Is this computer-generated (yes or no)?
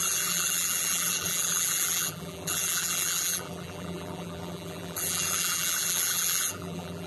yes